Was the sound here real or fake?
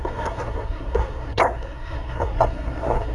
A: fake